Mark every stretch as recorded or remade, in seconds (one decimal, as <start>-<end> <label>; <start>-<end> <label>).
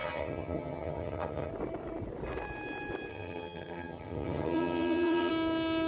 0.0-1.5 remade; 1.5-3.1 recorded; 3.1-5.3 remade; 5.3-5.9 recorded